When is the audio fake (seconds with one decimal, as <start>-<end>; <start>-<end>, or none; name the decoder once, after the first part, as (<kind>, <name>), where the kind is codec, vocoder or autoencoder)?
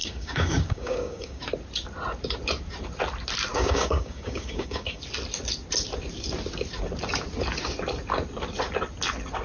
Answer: 0.0-1.4 (codec, DAC); 3.5-5.0